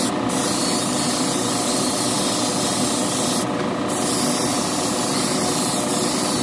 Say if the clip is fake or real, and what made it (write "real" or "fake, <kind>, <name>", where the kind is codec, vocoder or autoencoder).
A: real